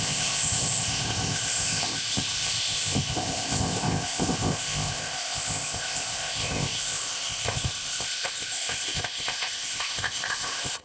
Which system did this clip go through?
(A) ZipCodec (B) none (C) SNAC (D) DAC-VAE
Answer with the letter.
A